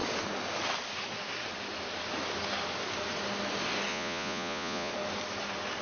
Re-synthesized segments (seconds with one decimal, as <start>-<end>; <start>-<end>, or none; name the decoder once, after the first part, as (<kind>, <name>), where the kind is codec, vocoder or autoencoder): 3.9-4.9 (vocoder, Vocos)